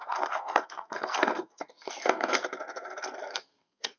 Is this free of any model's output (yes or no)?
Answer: no